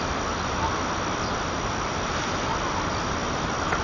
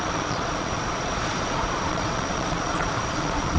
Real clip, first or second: first